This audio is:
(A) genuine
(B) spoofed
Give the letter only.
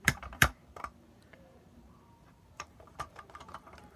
B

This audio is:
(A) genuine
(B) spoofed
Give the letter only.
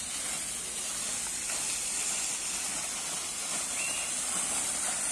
A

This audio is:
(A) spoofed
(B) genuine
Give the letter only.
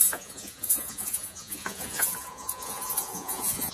A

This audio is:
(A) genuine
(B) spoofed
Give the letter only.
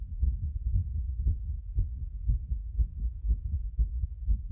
B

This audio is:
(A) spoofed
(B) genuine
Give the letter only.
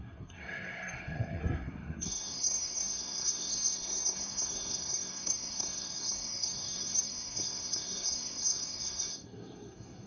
A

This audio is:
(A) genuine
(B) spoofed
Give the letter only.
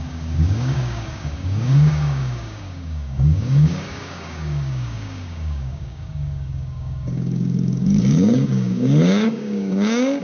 B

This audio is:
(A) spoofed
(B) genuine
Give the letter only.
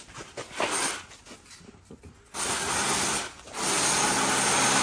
B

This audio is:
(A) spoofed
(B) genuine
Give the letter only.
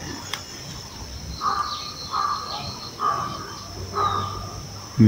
B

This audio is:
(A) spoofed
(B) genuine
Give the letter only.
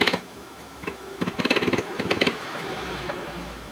A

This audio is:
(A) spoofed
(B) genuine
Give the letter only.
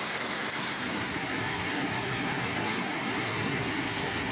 A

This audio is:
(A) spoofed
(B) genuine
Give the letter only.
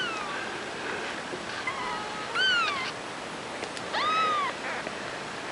B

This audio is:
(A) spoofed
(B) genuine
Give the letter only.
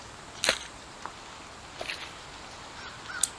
B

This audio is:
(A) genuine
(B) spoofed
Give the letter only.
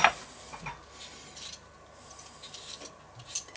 A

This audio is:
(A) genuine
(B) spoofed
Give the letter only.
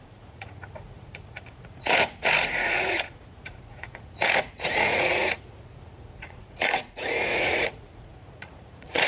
B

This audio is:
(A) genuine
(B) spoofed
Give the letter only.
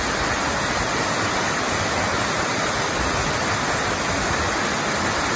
A